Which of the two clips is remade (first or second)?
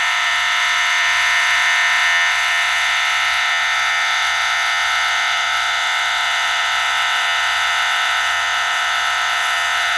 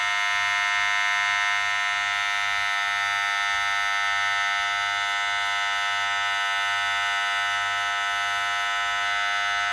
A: first